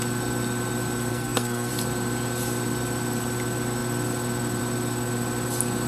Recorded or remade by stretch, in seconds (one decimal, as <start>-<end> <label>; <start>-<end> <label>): 0.0-1.1 recorded; 1.1-1.7 remade; 1.7-5.9 recorded